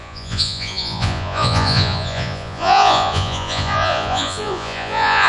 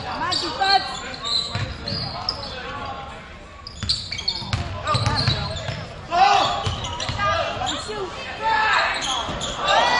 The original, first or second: second